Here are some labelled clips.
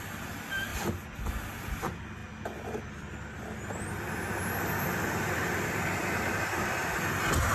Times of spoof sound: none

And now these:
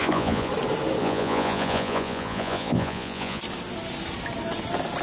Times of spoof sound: 0.0-0.5; 1.0-3.4

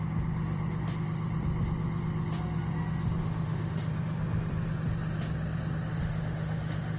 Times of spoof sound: 3.2-3.9; 5.9-7.0

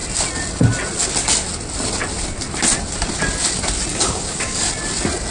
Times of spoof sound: 3.9-4.6

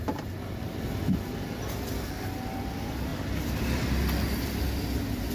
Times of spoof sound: none